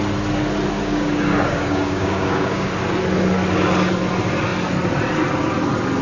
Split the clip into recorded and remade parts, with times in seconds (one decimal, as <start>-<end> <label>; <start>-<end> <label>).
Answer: 0.0-0.8 recorded; 0.8-2.7 remade; 2.7-6.0 recorded